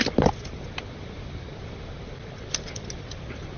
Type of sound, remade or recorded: recorded